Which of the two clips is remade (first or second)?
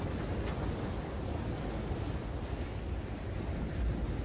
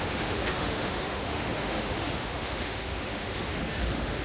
second